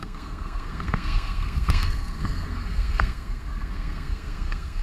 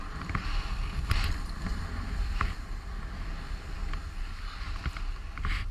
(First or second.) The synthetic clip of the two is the first